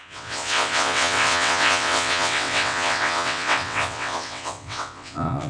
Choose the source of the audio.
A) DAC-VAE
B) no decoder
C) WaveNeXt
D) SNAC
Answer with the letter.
C